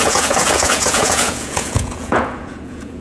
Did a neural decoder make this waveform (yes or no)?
yes